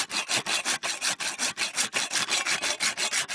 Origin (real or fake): real